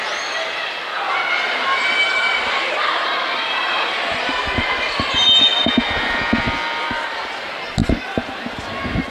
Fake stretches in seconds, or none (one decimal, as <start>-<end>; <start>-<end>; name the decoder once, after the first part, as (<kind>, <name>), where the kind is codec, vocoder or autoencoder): none